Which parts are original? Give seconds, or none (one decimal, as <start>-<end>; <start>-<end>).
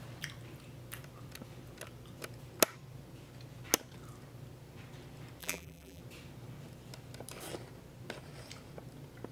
0.0-5.4; 6.0-9.3